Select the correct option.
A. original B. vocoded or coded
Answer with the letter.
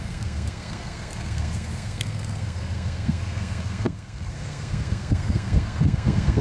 B